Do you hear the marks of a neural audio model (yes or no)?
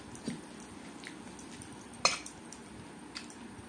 no